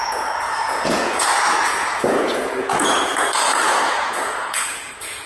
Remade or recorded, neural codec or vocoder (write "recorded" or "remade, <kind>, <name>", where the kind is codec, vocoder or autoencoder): remade, vocoder, Vocos